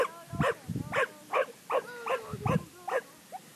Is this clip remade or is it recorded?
recorded